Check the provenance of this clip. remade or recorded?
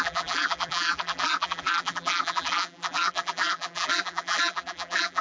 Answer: remade